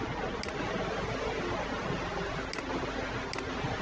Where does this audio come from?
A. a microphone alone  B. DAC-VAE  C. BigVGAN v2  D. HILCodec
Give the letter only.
A